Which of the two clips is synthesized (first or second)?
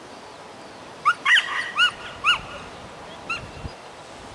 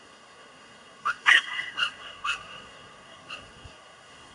second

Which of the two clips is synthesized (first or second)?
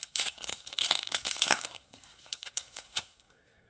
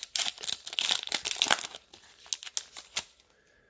first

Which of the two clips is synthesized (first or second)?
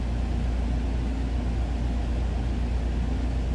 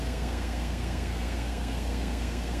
second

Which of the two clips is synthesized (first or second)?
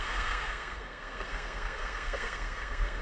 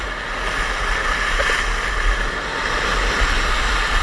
first